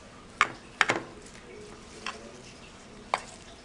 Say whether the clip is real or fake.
real